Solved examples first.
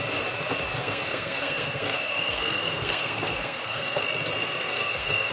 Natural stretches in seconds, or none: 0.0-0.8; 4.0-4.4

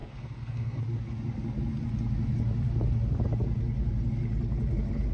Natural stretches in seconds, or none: 0.8-5.1

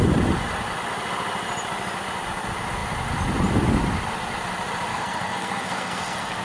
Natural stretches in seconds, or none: 0.0-4.9

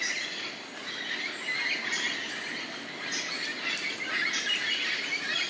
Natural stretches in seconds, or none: 0.0-5.5

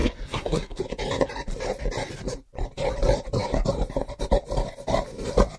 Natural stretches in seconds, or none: 0.8-5.6

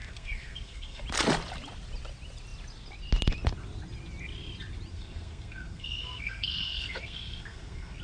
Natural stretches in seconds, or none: 1.0-4.9

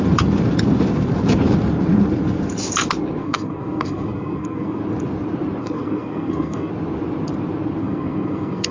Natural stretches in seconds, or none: 0.0-3.2; 4.8-5.6; 6.7-7.8